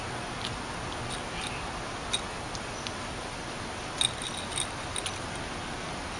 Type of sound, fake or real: real